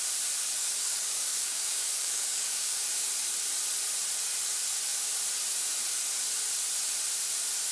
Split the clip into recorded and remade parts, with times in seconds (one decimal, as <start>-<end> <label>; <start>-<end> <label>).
0.0-0.6 recorded; 0.6-2.8 remade; 2.8-7.7 recorded